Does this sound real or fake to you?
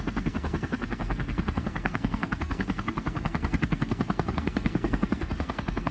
fake